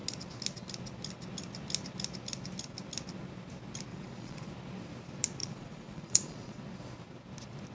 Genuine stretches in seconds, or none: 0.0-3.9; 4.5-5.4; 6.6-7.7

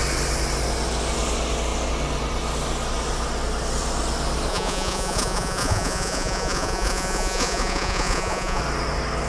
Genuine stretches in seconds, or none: 0.0-4.5; 8.6-9.3

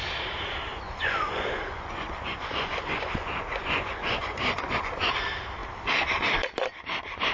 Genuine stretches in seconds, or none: 0.0-0.7; 5.1-7.3

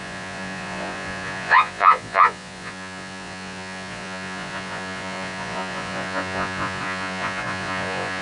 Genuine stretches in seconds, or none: none

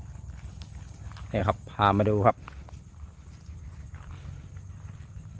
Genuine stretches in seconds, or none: 0.0-5.4

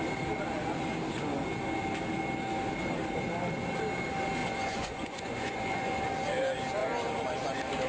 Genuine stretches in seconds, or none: 0.0-4.4; 6.0-7.9

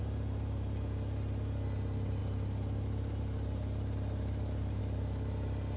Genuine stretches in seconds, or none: 0.0-5.8